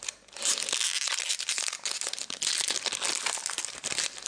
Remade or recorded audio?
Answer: recorded